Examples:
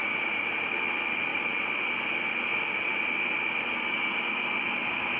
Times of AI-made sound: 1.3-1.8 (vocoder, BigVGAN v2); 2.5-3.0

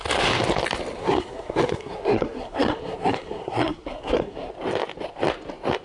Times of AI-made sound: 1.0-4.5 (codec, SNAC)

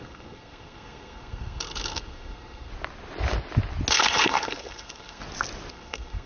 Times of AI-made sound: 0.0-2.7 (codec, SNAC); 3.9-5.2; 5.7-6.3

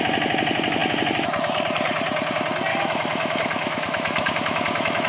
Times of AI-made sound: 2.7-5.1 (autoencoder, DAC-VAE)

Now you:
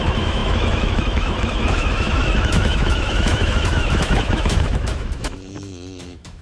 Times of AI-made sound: 0.0-6.4 (autoencoder, DAC-VAE)